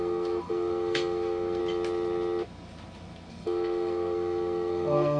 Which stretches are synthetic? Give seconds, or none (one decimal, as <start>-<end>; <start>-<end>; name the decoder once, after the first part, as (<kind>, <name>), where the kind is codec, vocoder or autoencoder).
0.0-1.6 (codec, SNAC); 3.3-5.2